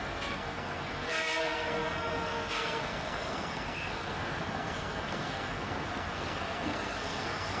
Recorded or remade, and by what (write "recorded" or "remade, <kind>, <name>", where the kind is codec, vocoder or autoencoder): remade, codec, SNAC